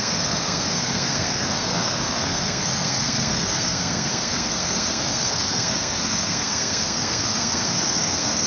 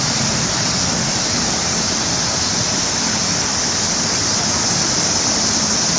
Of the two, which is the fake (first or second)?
first